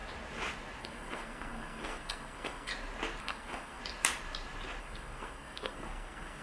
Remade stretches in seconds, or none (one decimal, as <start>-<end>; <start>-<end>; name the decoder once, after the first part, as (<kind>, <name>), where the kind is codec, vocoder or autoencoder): 0.8-2.7 (codec, SNAC); 3.2-3.8; 4.8-6.4